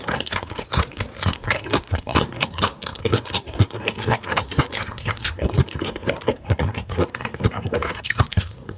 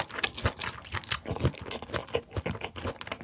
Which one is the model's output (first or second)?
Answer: first